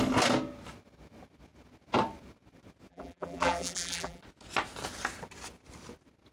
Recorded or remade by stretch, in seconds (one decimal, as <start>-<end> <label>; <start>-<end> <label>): 0.0-2.9 recorded; 2.9-4.2 remade; 4.2-6.3 recorded